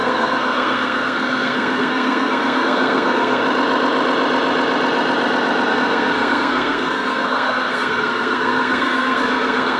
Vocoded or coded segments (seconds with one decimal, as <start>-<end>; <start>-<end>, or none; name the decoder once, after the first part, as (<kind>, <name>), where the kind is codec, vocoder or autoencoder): 0.0-3.4 (codec, SNAC); 5.7-9.8

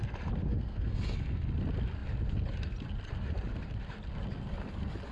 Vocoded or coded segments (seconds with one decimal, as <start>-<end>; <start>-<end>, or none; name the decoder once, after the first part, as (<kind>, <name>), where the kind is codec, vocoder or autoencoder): 0.4-1.0 (codec, SNAC)

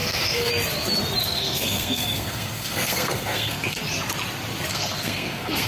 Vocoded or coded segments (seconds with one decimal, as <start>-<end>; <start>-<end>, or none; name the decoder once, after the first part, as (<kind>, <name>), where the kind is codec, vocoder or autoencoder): 0.0-0.5 (codec, SNAC); 1.2-3.8; 4.7-5.7

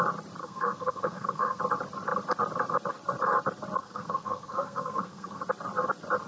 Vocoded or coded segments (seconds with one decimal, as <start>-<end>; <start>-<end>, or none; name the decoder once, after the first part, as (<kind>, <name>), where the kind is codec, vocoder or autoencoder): 0.4-1.6 (codec, SNAC); 3.8-5.4